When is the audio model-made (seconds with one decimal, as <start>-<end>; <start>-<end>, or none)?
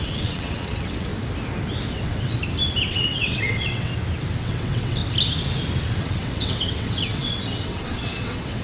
0.0-1.1; 1.9-2.4; 2.9-3.9; 4.4-5.0; 6.0-8.6